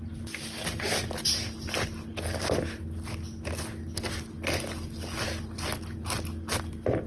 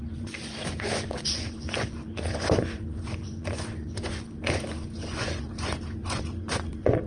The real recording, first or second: first